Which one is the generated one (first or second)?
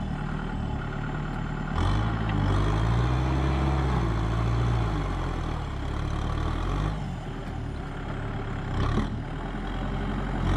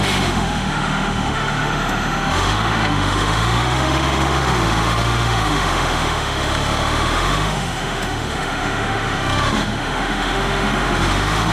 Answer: second